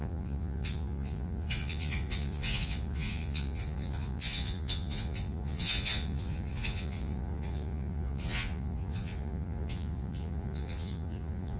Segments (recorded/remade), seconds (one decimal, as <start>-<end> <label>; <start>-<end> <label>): 0.0-11.6 remade